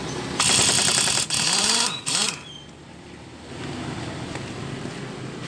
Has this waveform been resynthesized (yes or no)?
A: yes